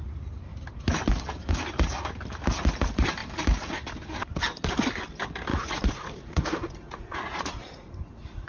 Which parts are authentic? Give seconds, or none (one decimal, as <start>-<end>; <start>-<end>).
0.0-5.5